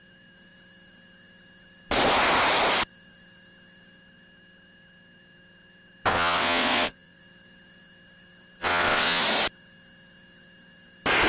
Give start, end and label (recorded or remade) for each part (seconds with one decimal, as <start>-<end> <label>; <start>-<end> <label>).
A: 0.0-6.1 recorded; 6.1-7.2 remade; 7.2-8.6 recorded; 8.6-9.2 remade; 9.2-11.3 recorded